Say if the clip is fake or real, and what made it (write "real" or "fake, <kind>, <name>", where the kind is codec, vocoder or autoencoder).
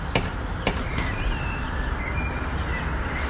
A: real